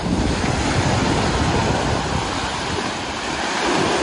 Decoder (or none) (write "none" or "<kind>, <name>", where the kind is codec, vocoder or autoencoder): none